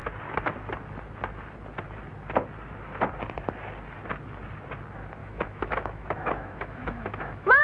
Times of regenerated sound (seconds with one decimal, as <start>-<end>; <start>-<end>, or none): 5.2-7.6